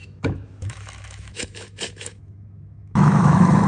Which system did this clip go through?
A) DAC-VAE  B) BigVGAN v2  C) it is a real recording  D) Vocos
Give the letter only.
A